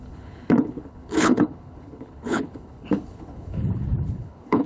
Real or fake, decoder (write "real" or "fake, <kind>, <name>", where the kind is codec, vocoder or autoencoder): fake, codec, HILCodec